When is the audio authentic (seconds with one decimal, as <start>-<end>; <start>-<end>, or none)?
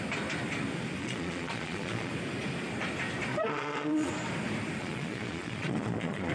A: 0.0-1.0; 2.1-3.3; 4.1-4.8